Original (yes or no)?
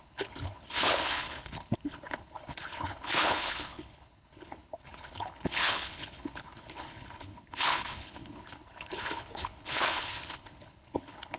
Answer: no